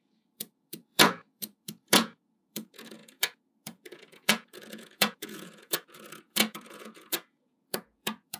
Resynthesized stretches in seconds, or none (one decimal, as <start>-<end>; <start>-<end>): 0.0-8.4